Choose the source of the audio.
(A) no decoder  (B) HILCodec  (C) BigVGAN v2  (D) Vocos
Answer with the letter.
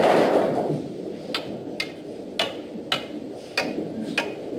A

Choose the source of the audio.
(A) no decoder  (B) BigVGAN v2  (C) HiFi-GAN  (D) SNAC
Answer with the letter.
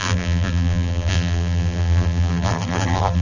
B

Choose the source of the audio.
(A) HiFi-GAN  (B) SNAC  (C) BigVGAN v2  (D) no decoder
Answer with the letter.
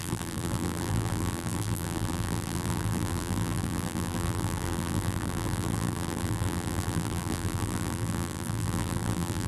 C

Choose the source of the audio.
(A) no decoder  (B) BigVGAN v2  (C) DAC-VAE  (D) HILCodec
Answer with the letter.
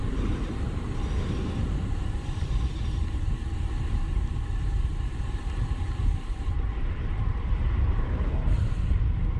B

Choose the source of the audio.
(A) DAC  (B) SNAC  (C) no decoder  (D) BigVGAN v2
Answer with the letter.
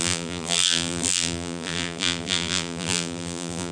D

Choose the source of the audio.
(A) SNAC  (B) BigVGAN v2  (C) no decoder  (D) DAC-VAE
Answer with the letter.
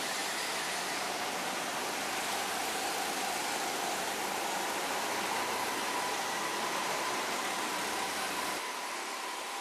B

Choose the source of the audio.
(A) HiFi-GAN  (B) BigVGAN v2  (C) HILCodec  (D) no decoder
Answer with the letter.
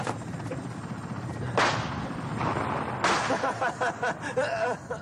D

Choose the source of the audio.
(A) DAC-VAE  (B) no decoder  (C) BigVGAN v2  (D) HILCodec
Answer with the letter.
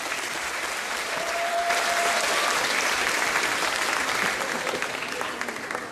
B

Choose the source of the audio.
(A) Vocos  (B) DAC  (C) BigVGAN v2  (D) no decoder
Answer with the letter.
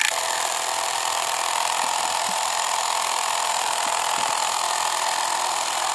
C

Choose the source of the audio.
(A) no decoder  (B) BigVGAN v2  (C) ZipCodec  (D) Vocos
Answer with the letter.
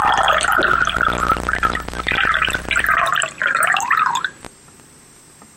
A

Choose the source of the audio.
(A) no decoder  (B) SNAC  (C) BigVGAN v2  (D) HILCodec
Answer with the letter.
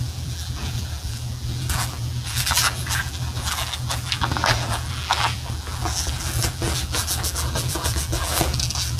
C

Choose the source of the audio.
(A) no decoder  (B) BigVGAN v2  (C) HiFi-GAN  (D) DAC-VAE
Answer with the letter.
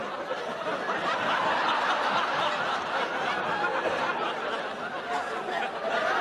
A